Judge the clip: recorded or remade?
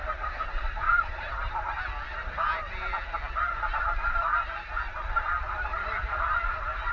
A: recorded